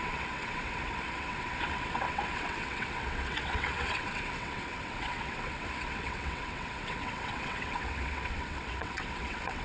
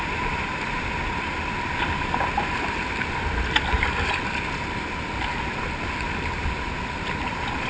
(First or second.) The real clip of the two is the second